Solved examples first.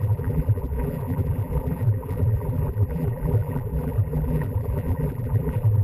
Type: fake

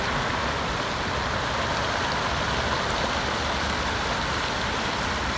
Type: real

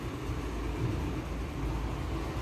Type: real